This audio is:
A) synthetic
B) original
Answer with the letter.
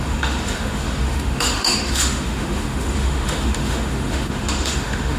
A